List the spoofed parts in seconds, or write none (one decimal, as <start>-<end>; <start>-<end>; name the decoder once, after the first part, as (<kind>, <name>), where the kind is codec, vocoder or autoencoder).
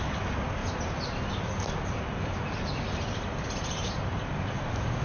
0.0-0.6 (vocoder, BigVGAN v2); 2.7-5.0